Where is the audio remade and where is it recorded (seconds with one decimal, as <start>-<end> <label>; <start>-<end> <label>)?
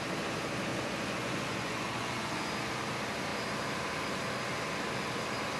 0.0-0.7 recorded; 0.7-2.5 remade; 2.5-5.6 recorded